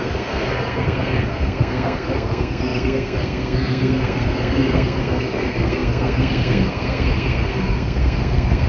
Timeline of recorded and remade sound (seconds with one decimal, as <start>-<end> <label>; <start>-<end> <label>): 0.0-8.7 remade